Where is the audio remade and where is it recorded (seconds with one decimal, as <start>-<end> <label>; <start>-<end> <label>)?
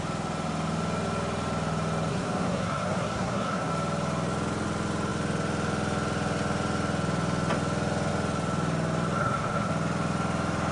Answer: 0.0-2.1 recorded; 2.1-3.7 remade; 3.7-9.2 recorded; 9.2-9.7 remade; 9.7-10.7 recorded